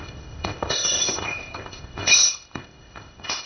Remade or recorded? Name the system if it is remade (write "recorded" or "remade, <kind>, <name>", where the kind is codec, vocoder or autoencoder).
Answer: remade, codec, ZipCodec